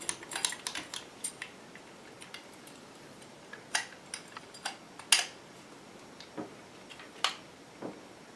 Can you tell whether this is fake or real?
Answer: real